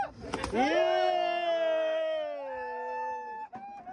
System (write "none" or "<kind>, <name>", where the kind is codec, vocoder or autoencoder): none